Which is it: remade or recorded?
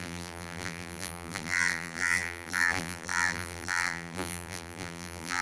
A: remade